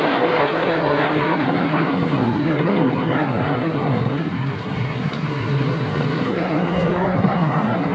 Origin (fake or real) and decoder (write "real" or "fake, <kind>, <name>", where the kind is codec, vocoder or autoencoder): fake, codec, SNAC